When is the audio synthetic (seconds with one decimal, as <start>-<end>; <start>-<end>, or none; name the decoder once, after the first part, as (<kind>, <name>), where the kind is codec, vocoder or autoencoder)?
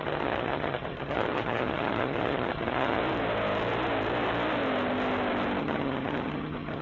0.0-3.0 (vocoder, HiFi-GAN); 5.6-6.8